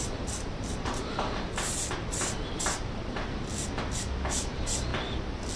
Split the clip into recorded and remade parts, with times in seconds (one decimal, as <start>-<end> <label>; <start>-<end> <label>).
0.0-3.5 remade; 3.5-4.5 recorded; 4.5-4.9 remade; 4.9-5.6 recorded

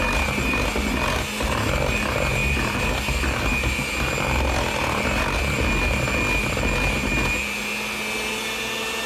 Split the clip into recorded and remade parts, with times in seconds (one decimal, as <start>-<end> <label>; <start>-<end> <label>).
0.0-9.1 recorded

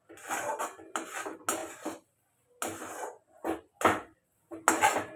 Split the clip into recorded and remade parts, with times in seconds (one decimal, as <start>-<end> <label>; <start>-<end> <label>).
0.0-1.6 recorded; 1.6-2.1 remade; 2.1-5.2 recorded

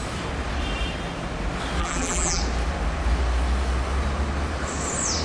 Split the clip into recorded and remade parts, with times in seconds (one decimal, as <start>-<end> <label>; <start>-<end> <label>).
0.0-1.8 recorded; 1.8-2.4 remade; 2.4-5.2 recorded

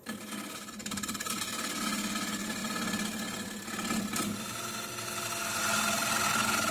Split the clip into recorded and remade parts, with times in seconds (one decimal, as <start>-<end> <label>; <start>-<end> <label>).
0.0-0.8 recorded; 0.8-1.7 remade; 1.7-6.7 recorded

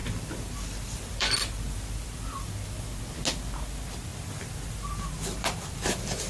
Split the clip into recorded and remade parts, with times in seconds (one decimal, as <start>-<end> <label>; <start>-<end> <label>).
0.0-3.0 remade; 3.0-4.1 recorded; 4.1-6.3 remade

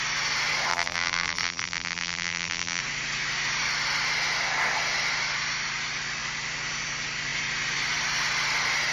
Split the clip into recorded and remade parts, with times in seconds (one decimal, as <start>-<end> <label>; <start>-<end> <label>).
0.0-0.7 recorded; 0.7-2.8 remade; 2.8-8.9 recorded